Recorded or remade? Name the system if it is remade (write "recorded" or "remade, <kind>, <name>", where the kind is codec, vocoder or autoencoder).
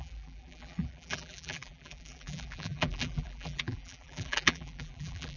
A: remade, vocoder, BigVGAN v2